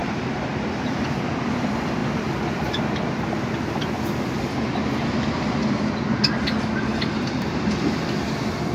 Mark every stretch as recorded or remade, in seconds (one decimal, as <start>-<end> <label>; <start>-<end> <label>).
0.0-1.0 remade; 1.0-6.9 recorded; 6.9-7.6 remade; 7.6-8.7 recorded